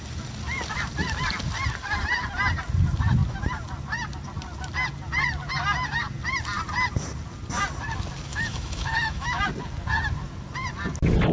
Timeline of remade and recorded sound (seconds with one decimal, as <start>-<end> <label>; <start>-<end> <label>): 0.0-8.3 recorded; 8.3-9.4 remade; 9.4-11.3 recorded